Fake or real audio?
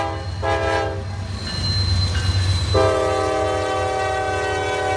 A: real